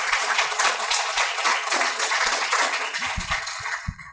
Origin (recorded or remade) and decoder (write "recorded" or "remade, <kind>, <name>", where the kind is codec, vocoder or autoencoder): remade, vocoder, Vocos